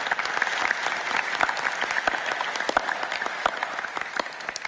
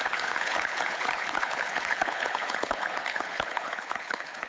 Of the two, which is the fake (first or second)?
second